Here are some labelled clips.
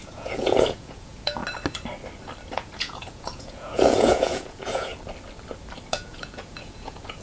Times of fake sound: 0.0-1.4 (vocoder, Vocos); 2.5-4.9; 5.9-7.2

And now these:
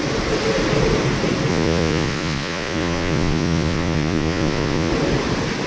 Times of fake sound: 1.5-4.9 (vocoder, Vocos)

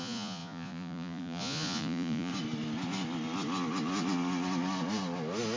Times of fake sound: 0.0-2.3 (vocoder, Vocos)

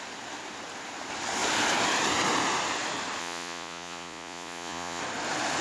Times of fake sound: 3.2-5.0 (vocoder, Vocos)